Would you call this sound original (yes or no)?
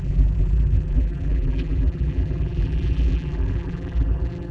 no